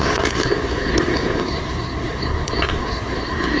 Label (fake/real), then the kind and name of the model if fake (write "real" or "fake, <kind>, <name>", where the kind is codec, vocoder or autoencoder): fake, codec, SNAC